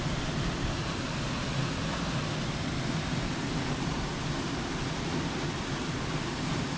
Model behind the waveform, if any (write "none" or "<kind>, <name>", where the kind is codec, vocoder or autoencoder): none